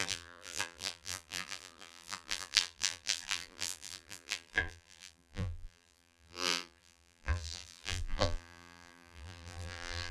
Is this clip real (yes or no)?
no